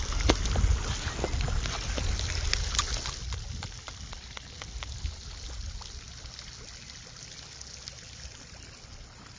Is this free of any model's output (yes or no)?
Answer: yes